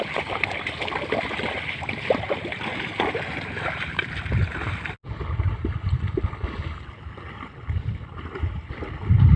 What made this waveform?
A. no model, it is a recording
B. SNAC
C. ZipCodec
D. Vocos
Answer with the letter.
A